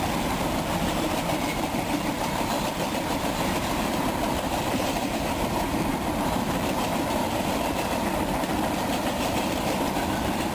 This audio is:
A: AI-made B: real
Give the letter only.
A